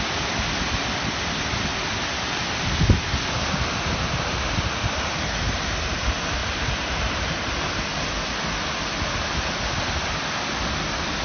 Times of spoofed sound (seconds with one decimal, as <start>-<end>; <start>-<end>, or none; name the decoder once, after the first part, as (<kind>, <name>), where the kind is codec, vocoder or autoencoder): 6.4-7.5 (vocoder, BigVGAN v2)